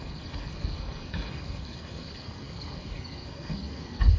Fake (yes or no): yes